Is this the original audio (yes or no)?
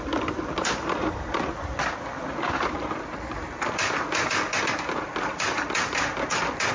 yes